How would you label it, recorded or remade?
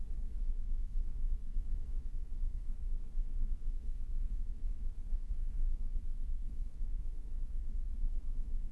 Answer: remade